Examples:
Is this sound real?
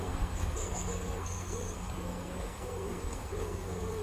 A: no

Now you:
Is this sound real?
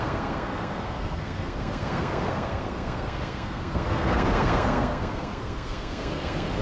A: no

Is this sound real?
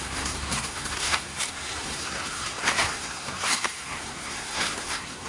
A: no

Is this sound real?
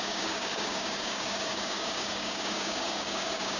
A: no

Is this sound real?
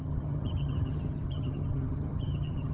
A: no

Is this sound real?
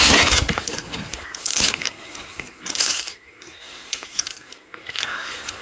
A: no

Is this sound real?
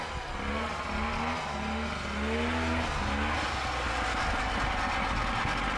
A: yes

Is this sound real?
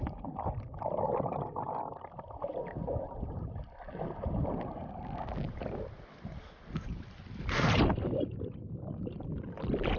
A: yes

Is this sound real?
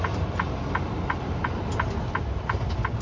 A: yes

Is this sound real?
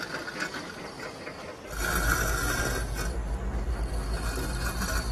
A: yes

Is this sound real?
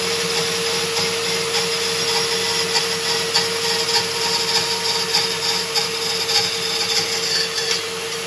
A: yes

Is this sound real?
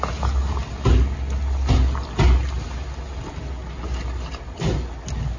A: yes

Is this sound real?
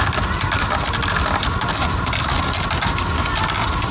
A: yes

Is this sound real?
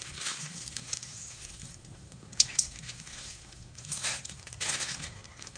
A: no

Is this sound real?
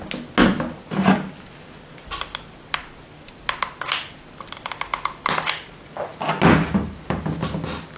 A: yes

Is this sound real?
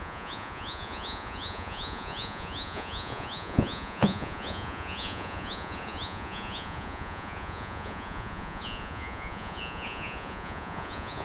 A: no